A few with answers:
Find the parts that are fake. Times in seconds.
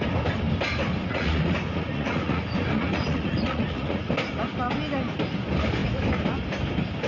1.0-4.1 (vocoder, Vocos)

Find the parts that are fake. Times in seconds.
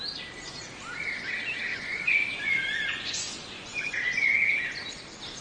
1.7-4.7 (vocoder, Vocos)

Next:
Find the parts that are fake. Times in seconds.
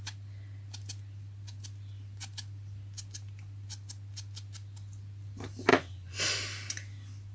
5.7-6.2 (vocoder, Vocos)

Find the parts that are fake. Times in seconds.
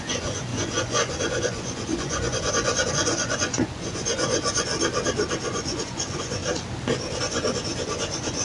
0.0-4.7 (vocoder, Vocos); 5.4-6.4; 7.2-8.4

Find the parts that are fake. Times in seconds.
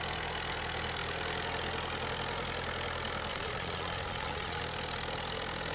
3.3-4.6 (vocoder, Vocos)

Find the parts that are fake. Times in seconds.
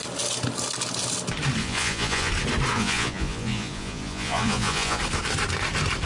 1.6-2.3 (vocoder, Vocos); 2.7-5.0